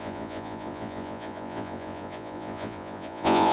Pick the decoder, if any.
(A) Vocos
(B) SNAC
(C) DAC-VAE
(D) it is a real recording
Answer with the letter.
A